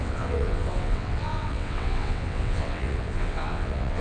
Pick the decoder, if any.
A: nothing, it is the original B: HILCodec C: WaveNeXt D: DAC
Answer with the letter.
C